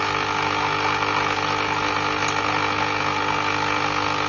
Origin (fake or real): real